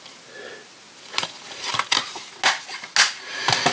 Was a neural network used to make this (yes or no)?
no